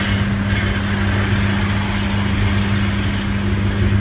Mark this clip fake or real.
real